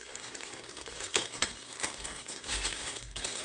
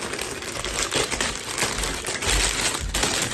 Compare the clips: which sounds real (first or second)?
second